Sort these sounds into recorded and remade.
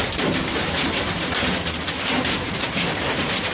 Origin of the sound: recorded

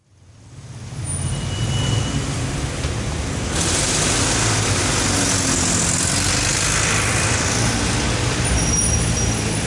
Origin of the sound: recorded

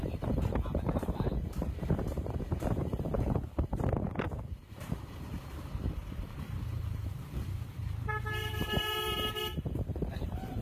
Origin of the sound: remade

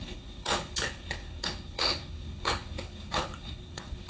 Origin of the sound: remade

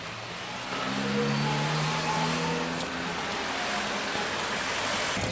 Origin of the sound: recorded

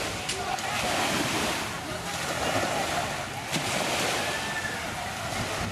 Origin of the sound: recorded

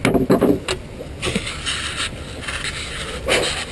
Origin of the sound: recorded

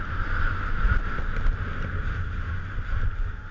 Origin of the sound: recorded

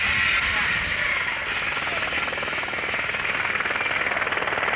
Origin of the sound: recorded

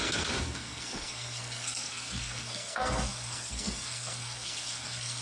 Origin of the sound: remade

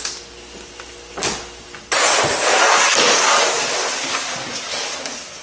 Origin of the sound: recorded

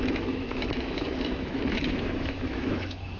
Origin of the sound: remade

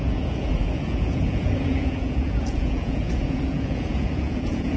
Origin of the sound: remade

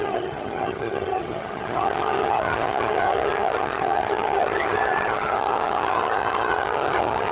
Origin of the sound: remade